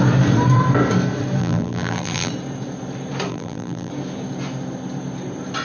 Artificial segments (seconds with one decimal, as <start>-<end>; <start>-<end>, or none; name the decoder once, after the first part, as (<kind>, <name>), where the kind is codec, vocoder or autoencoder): 1.4-2.3 (vocoder, BigVGAN v2); 3.3-3.9